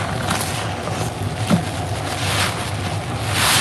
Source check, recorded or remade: recorded